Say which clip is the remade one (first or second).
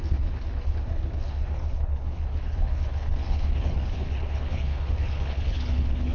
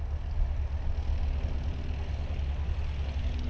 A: first